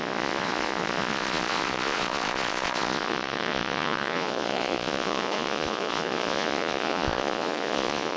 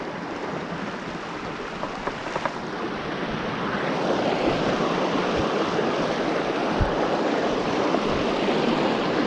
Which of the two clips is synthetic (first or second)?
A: first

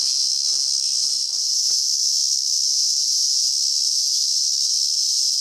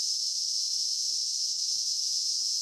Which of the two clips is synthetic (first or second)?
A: second